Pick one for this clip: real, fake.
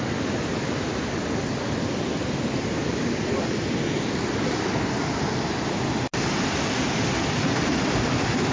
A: real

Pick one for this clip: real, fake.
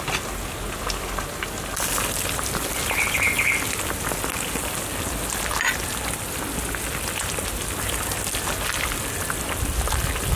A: real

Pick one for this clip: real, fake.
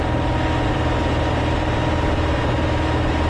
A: real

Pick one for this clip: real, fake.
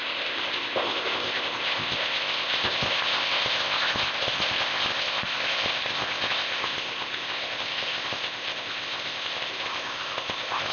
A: fake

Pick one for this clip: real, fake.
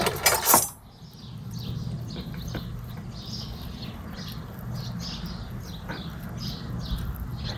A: real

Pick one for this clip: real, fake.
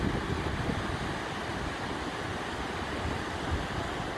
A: real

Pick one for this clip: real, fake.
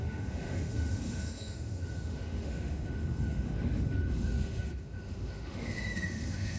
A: fake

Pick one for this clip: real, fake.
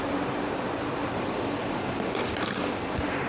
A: fake